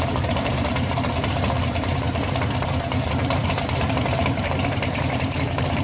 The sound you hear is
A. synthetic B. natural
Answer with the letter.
A